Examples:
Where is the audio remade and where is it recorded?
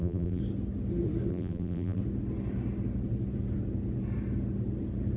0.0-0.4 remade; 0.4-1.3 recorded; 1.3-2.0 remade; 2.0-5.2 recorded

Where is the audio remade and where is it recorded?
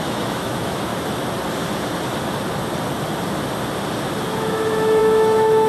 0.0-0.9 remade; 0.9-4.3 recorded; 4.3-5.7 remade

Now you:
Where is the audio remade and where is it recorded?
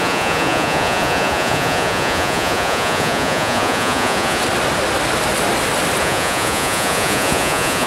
0.0-4.4 remade; 4.4-6.0 recorded; 6.0-7.9 remade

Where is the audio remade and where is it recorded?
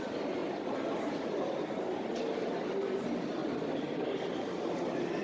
0.0-0.4 recorded; 0.4-1.4 remade; 1.4-3.4 recorded; 3.4-4.3 remade; 4.3-5.2 recorded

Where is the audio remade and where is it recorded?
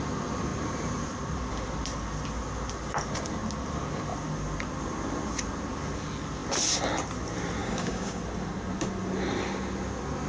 0.0-7.6 recorded; 7.6-8.2 remade; 8.2-10.3 recorded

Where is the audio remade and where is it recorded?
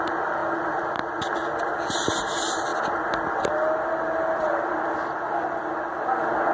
0.0-6.5 recorded